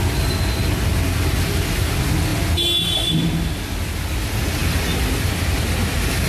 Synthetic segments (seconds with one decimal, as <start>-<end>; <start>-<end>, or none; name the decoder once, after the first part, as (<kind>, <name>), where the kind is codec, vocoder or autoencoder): none